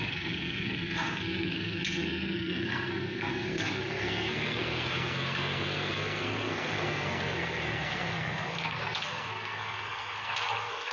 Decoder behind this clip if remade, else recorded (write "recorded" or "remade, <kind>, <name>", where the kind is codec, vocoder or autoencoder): remade, codec, SNAC